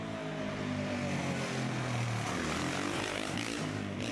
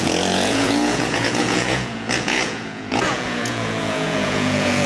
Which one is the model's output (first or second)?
second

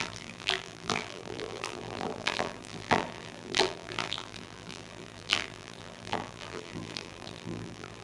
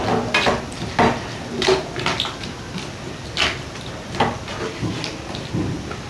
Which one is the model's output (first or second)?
first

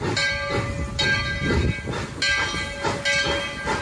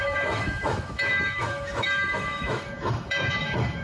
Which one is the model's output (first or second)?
second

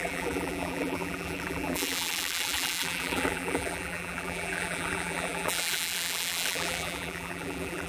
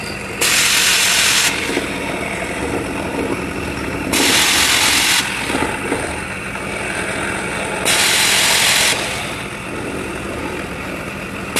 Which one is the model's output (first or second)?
first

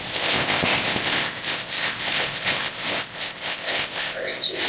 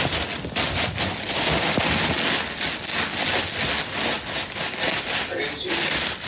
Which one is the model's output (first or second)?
first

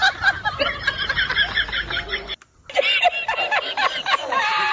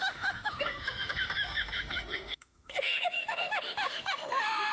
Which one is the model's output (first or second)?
second